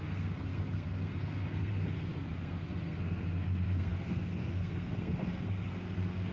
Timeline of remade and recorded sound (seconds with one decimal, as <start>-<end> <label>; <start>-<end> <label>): 0.0-6.3 remade